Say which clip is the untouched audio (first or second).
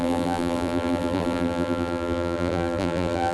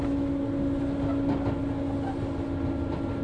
second